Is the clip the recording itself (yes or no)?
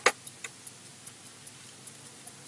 yes